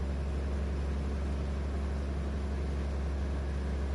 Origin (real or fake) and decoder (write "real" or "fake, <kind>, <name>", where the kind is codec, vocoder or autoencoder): real